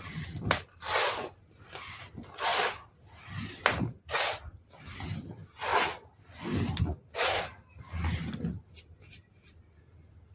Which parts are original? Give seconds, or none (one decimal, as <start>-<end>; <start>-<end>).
0.0-10.3